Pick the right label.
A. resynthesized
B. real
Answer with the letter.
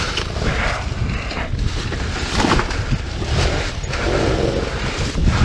B